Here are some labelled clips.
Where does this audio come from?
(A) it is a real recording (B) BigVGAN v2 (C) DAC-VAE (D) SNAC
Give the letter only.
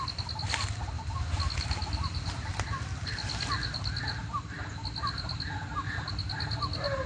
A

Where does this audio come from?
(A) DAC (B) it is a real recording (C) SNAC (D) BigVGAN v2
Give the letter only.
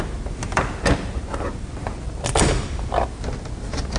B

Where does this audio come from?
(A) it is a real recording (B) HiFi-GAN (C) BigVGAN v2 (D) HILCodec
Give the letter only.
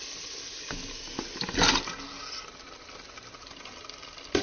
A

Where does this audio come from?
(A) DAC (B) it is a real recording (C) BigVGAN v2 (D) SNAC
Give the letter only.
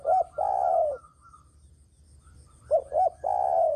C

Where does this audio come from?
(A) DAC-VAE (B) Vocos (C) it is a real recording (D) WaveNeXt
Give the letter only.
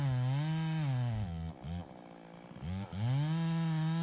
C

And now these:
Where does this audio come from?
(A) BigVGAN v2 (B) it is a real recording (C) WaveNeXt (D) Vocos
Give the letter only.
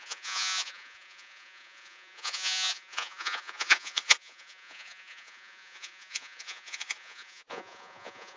D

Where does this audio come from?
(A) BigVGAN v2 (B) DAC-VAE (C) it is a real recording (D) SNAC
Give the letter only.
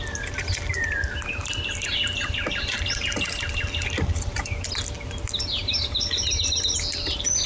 C